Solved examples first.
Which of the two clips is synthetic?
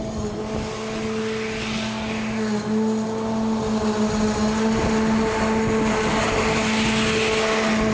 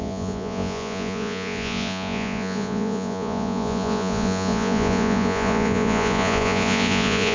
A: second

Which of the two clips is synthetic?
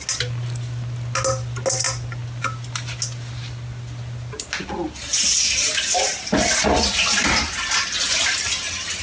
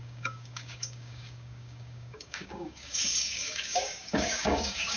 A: second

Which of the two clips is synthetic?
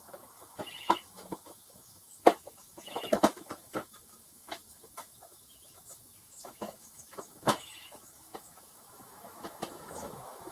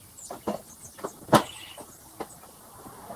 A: first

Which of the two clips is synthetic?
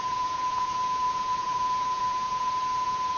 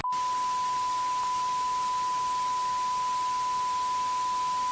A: first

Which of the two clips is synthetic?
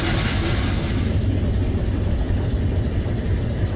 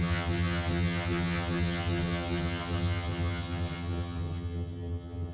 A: second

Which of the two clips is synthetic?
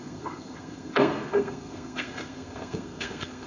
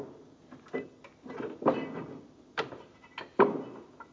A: first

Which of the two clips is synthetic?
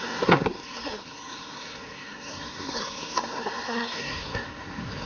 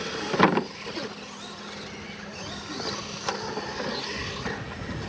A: first